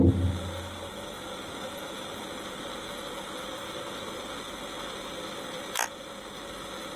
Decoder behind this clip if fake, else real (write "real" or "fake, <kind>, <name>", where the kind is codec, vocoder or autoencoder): real